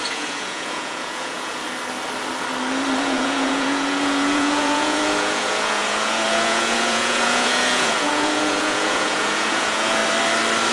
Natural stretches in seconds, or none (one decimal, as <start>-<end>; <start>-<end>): 1.6-3.0; 10.0-10.7